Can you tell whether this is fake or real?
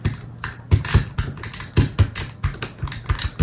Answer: real